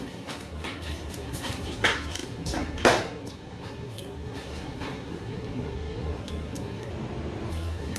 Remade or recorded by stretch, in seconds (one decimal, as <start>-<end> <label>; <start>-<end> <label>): 0.0-6.9 remade; 6.9-7.5 recorded; 7.5-8.0 remade